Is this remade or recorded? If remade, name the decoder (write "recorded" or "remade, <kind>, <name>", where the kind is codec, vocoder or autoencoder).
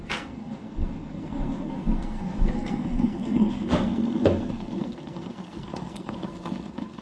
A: remade, codec, SNAC